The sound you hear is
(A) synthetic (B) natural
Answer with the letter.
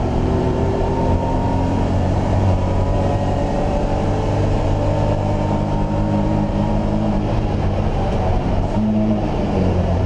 A